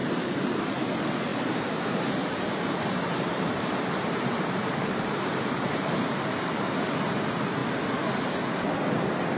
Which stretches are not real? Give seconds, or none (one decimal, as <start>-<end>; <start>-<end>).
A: 1.3-5.7